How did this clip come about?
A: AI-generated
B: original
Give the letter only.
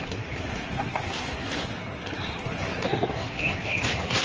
A